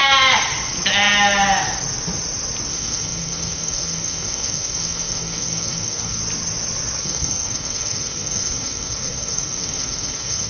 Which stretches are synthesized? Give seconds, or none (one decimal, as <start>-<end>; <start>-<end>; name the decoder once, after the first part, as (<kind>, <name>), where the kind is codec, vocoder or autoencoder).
2.7-6.2 (codec, SNAC); 7.0-10.5